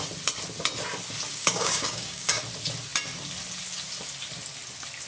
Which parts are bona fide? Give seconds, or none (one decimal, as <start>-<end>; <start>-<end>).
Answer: 0.0-1.3; 2.4-5.1

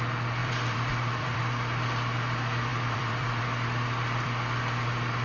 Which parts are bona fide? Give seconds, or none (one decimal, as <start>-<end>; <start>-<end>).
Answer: 0.0-0.4; 1.4-2.7; 3.4-5.2